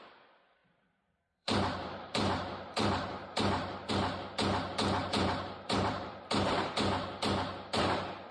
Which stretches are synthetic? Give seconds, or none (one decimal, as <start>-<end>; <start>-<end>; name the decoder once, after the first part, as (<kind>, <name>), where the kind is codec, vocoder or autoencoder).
0.6-3.9 (vocoder, BigVGAN v2); 5.0-6.7